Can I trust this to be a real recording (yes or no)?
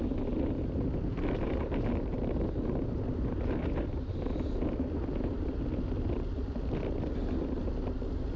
yes